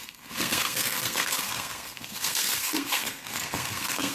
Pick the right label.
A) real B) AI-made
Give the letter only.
B